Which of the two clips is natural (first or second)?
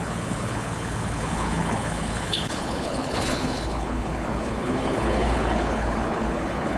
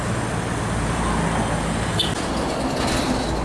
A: second